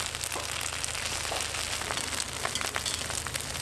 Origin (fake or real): real